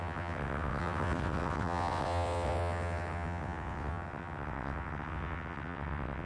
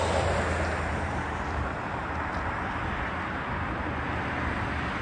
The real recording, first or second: second